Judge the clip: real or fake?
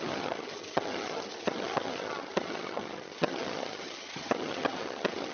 fake